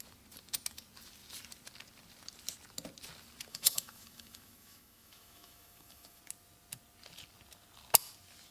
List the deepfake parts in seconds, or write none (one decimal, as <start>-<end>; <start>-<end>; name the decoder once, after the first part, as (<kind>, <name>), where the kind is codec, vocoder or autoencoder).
3.5-6.2 (autoencoder, DAC-VAE)